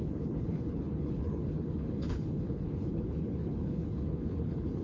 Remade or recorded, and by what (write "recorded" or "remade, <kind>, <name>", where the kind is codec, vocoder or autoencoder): remade, codec, HILCodec